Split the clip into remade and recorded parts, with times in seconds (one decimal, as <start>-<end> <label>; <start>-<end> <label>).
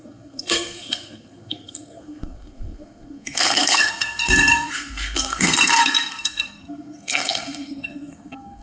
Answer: 0.0-8.6 remade